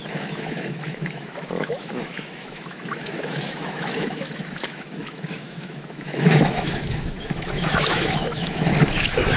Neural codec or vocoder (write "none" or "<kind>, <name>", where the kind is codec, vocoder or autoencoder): autoencoder, DAC-VAE